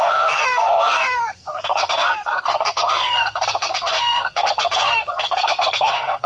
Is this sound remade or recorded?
remade